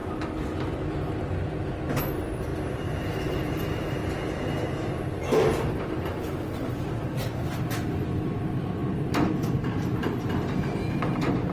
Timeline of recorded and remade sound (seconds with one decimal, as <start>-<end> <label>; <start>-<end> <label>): 0.0-2.0 recorded; 2.0-2.5 remade; 2.5-3.0 recorded; 3.0-4.0 remade; 4.0-5.2 recorded; 5.2-11.5 remade